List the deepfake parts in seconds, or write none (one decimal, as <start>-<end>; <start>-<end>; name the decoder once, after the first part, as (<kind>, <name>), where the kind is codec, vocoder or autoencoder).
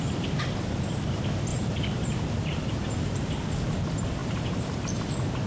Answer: 1.5-3.3 (vocoder, BigVGAN v2); 4.2-5.1